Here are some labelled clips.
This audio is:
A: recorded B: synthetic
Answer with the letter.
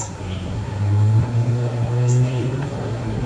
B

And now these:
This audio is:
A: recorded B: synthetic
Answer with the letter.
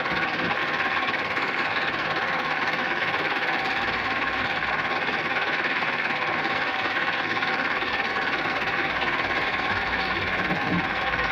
B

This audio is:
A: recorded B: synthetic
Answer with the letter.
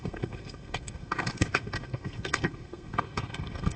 B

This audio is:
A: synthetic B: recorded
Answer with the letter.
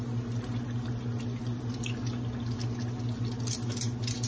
B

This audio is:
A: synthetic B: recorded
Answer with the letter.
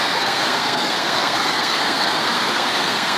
A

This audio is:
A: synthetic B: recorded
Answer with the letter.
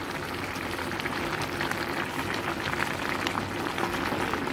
B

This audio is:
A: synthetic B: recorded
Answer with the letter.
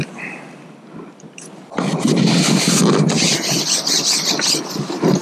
B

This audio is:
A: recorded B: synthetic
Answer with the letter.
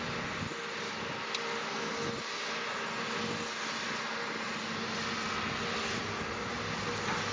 A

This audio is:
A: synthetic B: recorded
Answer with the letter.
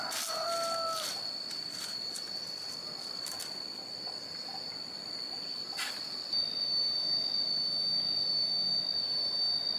B